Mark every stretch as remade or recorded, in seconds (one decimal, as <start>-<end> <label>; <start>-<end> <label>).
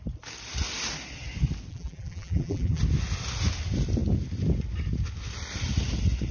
0.0-1.7 recorded; 1.7-2.8 remade; 2.8-6.3 recorded